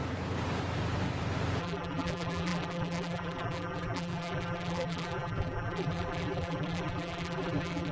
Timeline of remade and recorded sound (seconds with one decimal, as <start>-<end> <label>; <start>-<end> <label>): 0.0-1.6 recorded; 1.6-7.9 remade